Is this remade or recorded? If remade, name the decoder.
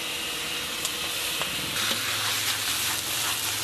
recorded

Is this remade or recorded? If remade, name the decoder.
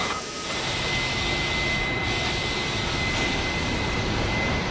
recorded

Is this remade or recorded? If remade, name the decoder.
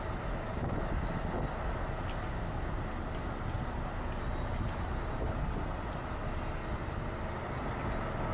recorded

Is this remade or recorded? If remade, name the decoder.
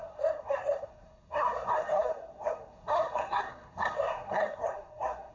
remade, codec, SNAC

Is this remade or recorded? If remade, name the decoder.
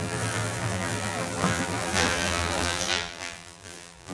remade, vocoder, BigVGAN v2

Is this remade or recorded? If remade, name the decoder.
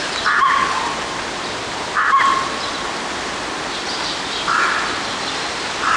recorded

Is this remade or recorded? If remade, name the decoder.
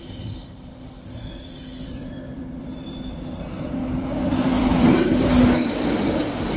remade, vocoder, BigVGAN v2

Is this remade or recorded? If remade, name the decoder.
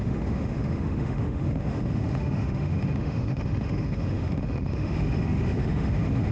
remade, autoencoder, DAC-VAE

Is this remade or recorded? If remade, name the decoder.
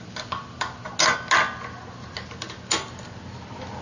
recorded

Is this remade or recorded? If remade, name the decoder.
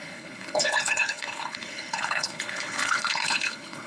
remade, codec, HILCodec